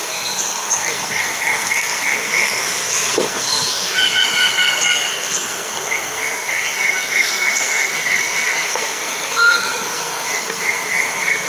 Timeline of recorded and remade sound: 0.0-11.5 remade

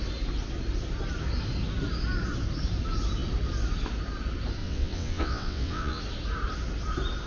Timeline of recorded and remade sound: 0.0-4.6 recorded; 4.6-6.0 remade; 6.0-7.3 recorded